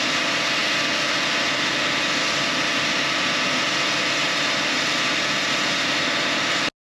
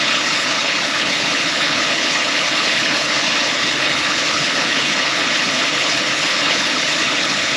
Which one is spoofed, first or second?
second